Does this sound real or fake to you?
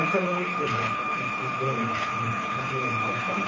fake